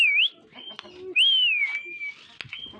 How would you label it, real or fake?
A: real